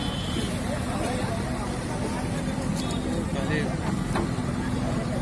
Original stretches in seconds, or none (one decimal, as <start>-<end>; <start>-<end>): 1.3-4.4